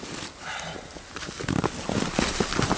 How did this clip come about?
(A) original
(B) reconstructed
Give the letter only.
A